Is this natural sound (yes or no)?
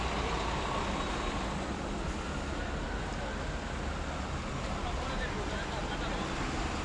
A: yes